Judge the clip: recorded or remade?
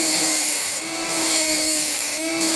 remade